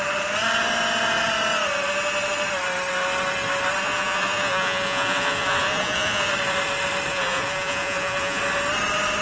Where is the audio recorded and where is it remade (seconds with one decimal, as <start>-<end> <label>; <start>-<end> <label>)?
0.0-3.8 recorded; 3.8-6.3 remade; 6.3-7.1 recorded; 7.1-8.4 remade; 8.4-9.2 recorded